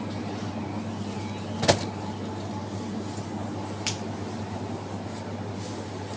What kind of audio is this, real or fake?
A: real